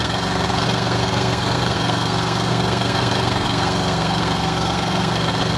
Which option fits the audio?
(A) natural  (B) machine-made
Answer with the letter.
B